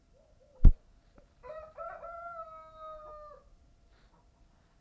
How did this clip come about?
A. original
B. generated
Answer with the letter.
A